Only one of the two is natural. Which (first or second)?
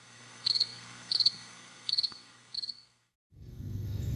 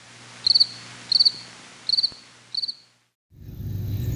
second